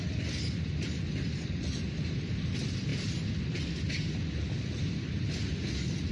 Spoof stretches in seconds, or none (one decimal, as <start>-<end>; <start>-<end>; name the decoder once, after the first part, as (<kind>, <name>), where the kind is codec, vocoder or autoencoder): none